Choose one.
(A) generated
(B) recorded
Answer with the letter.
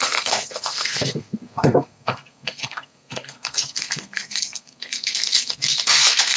A